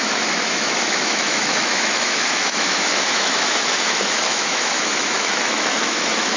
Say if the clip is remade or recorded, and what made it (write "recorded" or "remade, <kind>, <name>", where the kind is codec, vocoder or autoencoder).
remade, autoencoder, DAC-VAE